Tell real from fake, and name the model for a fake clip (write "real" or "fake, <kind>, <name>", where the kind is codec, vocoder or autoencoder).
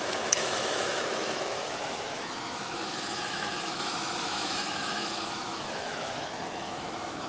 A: fake, autoencoder, DAC-VAE